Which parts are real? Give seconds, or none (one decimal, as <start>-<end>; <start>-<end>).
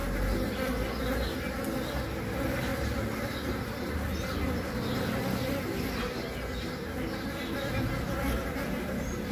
0.0-9.3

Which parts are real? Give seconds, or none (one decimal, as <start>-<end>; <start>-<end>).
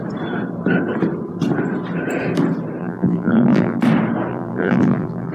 0.0-2.8; 3.8-4.3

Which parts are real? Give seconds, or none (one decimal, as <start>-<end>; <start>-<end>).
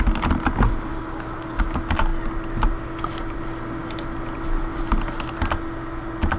0.0-6.4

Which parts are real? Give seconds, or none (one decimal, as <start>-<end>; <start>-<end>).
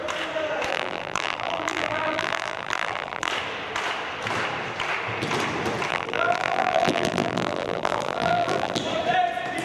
0.0-0.7; 3.3-5.9; 8.8-9.6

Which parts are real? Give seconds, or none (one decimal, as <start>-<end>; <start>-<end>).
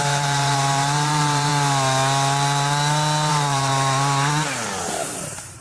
1.5-3.3; 3.7-4.9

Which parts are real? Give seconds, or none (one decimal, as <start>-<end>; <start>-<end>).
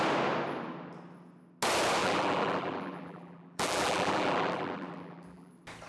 0.0-2.0; 5.5-5.9